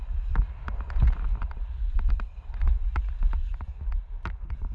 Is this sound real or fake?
real